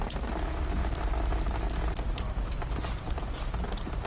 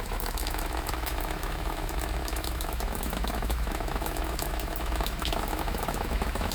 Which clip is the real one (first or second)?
first